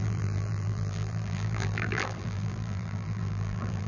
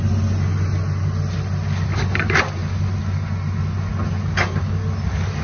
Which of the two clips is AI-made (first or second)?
first